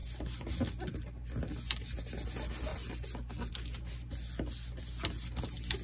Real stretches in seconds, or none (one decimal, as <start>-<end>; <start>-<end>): 0.0-5.8